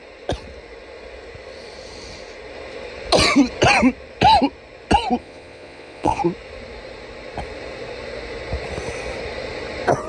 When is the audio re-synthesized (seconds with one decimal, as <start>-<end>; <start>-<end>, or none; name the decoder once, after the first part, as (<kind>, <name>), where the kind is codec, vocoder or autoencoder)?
5.2-6.2 (vocoder, Vocos)